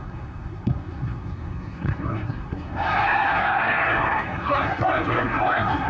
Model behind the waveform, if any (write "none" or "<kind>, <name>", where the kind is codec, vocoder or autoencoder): codec, SNAC